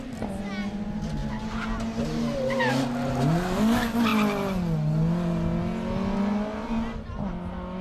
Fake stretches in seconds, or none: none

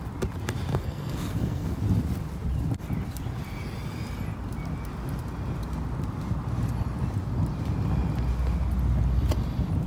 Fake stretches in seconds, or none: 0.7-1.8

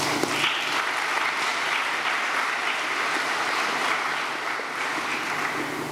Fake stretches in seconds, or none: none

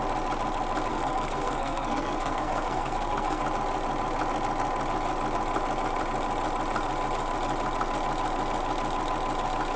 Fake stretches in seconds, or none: 0.9-3.4

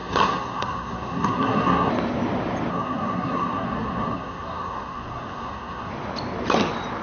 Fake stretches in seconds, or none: 0.0-1.9; 2.7-5.9

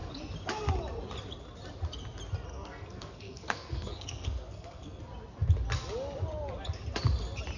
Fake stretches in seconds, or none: 2.5-5.0